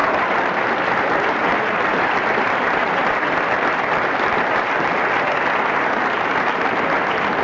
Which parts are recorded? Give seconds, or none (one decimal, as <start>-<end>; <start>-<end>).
0.0-7.4

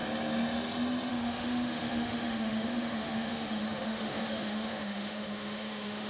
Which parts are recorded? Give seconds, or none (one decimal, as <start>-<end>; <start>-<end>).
0.0-1.1